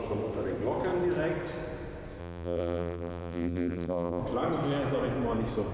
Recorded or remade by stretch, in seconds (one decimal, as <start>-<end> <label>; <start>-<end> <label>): 0.0-2.2 recorded; 2.2-4.2 remade; 4.2-5.7 recorded